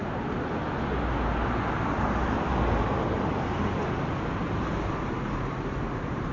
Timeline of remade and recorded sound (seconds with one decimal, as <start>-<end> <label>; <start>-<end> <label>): 0.0-6.3 recorded